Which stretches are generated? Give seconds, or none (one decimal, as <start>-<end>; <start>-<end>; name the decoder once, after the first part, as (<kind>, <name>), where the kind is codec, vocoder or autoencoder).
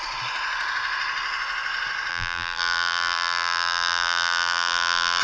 2.1-5.2 (vocoder, BigVGAN v2)